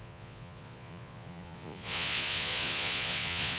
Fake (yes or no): yes